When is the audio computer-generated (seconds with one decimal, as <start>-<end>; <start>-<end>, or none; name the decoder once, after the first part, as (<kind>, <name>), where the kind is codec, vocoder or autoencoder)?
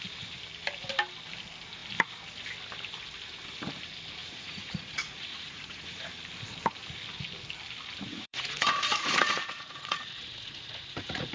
4.2-6.1 (vocoder, Vocos); 8.1-11.3